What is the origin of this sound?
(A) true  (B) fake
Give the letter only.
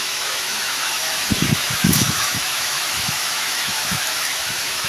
B